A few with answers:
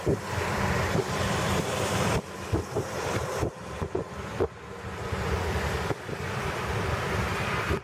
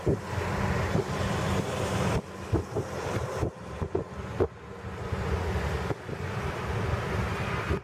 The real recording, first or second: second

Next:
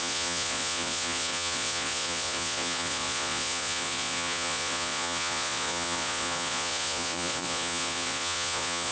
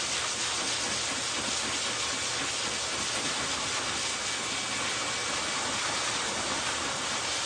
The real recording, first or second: second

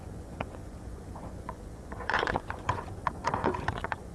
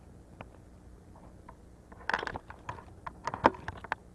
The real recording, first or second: second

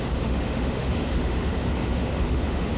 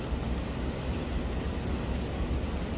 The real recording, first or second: second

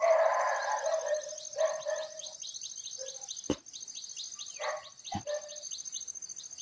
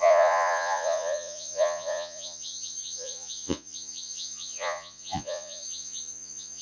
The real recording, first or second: first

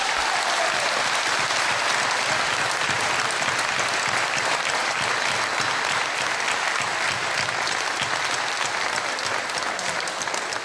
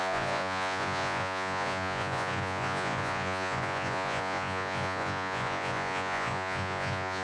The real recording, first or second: first